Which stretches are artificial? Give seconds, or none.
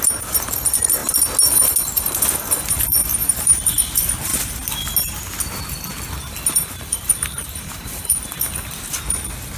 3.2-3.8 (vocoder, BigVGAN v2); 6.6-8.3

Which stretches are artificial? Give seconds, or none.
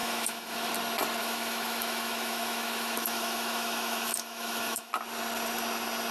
0.0-0.7 (autoencoder, DAC-VAE); 1.2-4.9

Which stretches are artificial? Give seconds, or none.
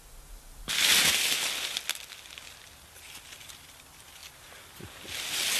none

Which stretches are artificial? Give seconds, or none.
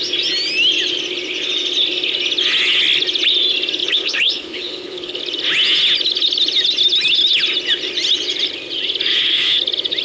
3.8-5.2 (codec, HILCodec); 9.1-9.6